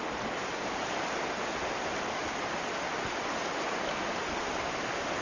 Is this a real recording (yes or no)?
yes